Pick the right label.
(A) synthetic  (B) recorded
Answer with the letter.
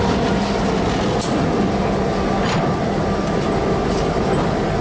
B